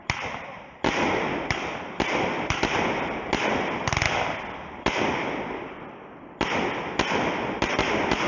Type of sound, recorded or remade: recorded